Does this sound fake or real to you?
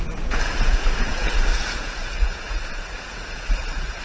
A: fake